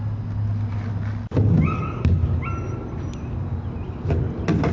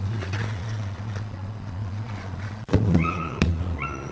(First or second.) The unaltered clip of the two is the first